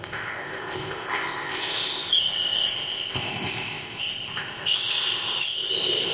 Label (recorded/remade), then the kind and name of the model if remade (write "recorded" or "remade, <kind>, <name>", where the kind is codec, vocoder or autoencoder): remade, codec, ZipCodec